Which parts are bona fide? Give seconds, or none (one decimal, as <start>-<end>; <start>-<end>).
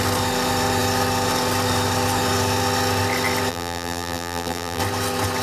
0.0-3.5; 4.8-5.4